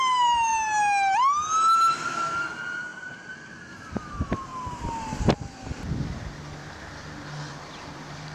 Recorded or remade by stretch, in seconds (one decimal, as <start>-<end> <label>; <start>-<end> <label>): 0.0-0.5 remade; 0.5-1.9 recorded; 1.9-2.9 remade; 2.9-3.5 recorded; 3.5-4.5 remade; 4.5-7.5 recorded; 7.5-8.3 remade